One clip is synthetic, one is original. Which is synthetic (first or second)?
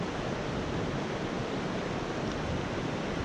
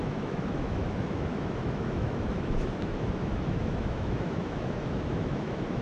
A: second